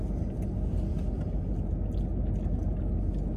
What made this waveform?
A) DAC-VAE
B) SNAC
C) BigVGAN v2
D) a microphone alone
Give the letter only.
D